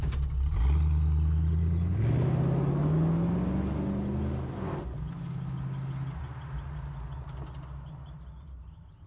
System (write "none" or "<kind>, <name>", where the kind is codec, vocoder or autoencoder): none